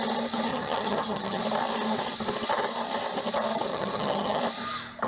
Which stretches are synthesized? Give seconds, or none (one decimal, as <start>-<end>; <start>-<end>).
0.5-1.4; 3.7-4.4